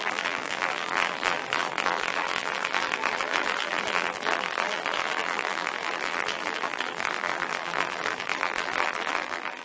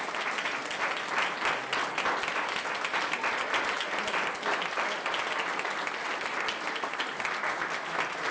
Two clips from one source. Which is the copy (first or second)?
first